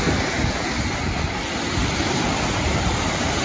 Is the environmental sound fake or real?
real